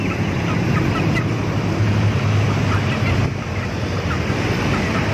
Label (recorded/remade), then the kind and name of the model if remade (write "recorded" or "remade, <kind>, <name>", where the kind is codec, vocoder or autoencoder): recorded